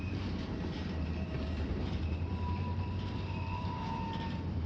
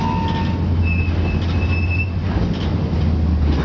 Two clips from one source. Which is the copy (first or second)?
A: first